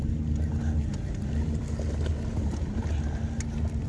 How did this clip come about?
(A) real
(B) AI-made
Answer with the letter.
A